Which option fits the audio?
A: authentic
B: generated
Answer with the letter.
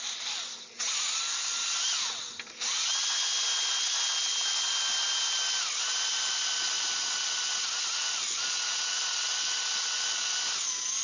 A